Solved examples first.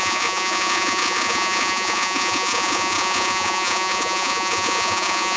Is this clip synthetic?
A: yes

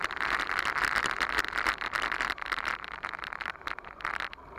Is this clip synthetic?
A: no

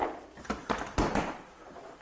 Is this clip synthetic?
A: no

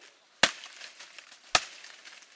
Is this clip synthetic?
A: no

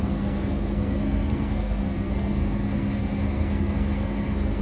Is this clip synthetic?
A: yes